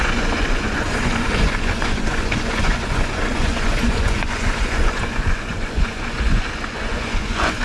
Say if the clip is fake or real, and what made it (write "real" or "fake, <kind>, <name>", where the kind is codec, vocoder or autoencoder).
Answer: fake, vocoder, Vocos